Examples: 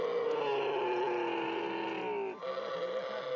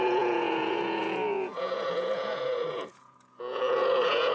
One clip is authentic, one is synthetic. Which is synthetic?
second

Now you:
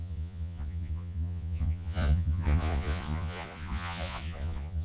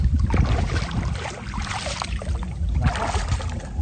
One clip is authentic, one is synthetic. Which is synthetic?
first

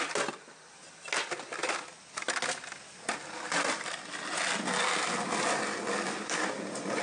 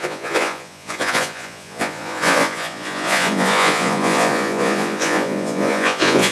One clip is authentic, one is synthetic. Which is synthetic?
second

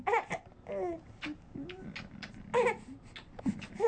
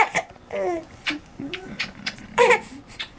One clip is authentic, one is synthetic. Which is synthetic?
second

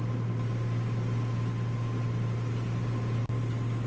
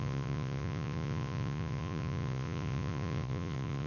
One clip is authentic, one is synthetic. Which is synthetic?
second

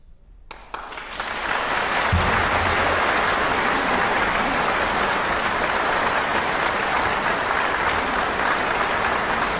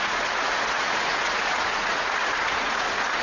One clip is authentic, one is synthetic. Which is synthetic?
second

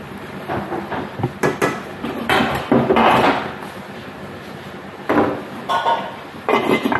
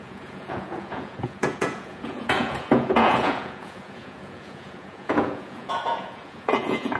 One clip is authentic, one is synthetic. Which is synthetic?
second